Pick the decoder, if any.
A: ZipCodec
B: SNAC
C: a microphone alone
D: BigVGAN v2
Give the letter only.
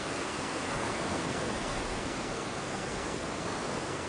B